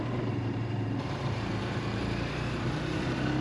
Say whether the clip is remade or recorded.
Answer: remade